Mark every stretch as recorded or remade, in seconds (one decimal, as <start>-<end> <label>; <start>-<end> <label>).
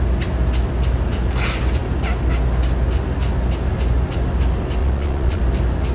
0.0-4.8 recorded; 4.8-5.4 remade; 5.4-5.9 recorded